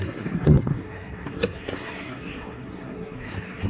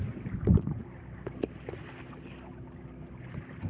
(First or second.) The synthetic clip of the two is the first